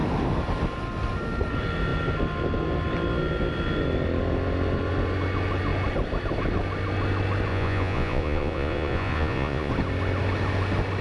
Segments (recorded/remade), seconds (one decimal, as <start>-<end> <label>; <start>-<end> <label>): 0.0-7.5 recorded; 7.5-9.7 remade; 9.7-11.0 recorded

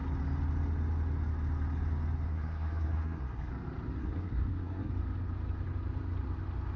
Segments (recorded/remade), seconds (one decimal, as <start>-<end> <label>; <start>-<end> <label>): 0.0-2.3 recorded; 2.3-3.5 remade; 3.5-4.0 recorded; 4.0-4.9 remade; 4.9-6.8 recorded

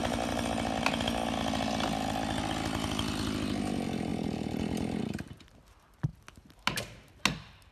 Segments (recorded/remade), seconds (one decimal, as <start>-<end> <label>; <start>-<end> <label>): 0.0-7.7 recorded

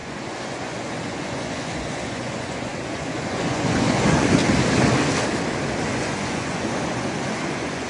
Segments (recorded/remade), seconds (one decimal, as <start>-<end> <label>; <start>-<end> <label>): 0.0-4.4 remade; 4.4-5.9 recorded; 5.9-7.9 remade

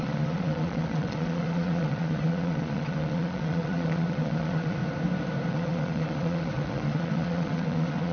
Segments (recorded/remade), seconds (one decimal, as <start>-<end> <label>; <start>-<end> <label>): 0.0-4.8 remade; 4.8-5.5 recorded; 5.5-8.1 remade